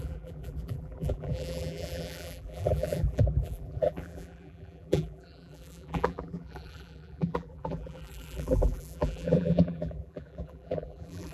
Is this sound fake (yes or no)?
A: yes